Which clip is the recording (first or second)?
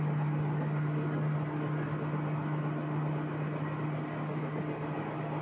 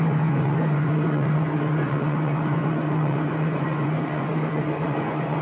first